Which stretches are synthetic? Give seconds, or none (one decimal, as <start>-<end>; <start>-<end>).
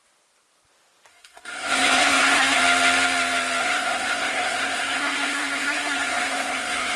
1.1-2.6; 3.6-7.0